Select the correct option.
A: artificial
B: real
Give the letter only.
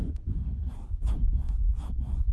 A